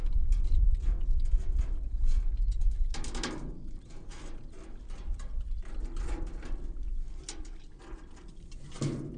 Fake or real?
real